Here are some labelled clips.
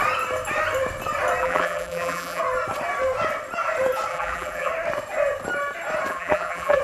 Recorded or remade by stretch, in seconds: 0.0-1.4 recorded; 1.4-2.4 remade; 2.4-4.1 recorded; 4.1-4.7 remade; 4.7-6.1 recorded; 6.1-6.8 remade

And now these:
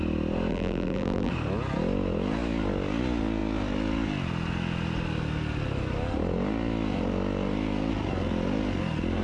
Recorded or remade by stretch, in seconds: 0.0-0.5 recorded; 0.5-1.3 remade; 1.3-9.2 recorded

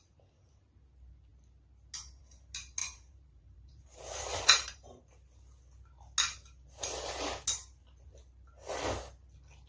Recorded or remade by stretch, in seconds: 0.0-2.8 recorded; 2.8-5.0 remade; 5.0-9.7 recorded